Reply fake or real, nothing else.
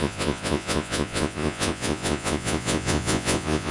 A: fake